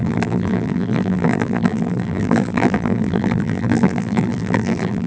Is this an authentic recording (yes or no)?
no